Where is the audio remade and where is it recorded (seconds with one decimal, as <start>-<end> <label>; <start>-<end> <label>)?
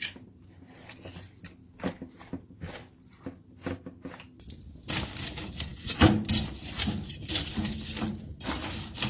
0.0-9.1 recorded